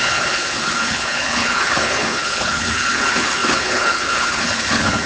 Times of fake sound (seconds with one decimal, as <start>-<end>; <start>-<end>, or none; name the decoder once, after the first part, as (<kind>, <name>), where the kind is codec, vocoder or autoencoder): 0.0-5.1 (codec, HILCodec)